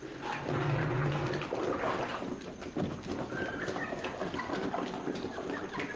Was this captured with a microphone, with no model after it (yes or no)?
yes